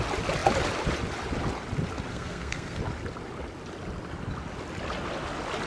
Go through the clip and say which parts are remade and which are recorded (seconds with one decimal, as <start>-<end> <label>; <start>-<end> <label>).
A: 0.0-2.1 recorded; 2.1-2.8 remade; 2.8-5.7 recorded